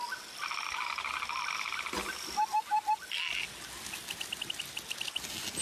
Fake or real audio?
real